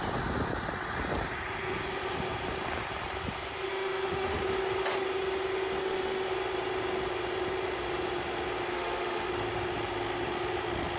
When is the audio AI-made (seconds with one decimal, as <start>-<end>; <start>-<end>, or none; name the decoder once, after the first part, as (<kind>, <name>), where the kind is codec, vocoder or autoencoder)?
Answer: 3.7-4.4 (autoencoder, DAC-VAE); 5.8-6.3; 8.7-9.3